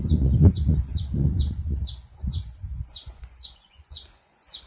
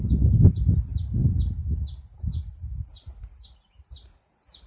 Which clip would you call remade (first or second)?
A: first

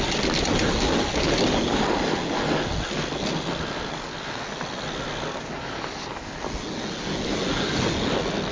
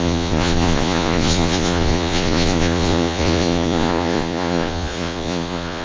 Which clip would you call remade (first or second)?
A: second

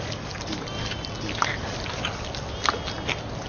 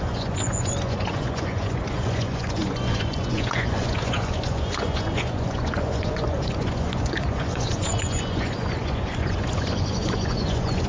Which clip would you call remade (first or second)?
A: second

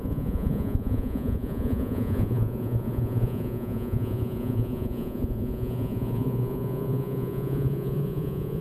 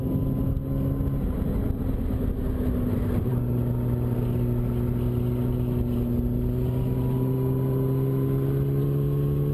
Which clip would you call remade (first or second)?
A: first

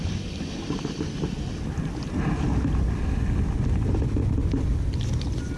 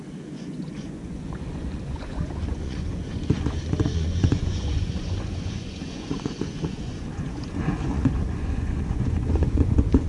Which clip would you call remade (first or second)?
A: second